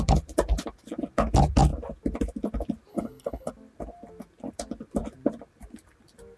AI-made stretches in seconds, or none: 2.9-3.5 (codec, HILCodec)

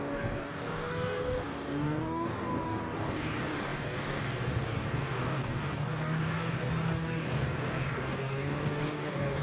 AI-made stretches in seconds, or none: 0.0-9.4 (codec, DAC)

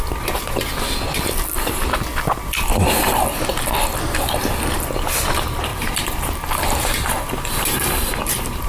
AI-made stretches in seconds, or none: 5.7-8.7 (vocoder, BigVGAN v2)

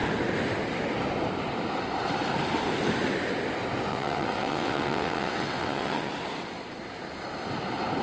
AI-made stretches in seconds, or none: 3.9-6.1 (vocoder, WaveNeXt)

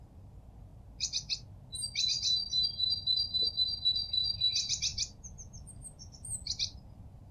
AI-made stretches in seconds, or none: none